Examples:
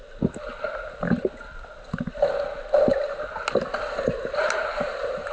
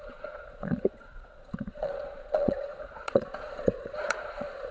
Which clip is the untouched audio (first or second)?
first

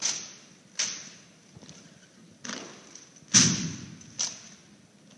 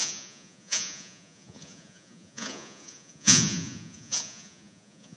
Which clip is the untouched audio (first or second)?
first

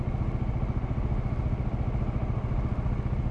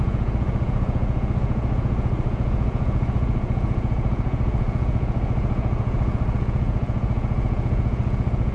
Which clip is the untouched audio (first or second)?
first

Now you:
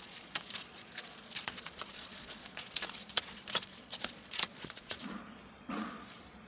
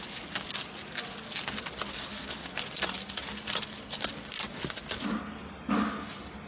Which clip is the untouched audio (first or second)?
second